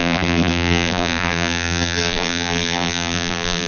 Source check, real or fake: fake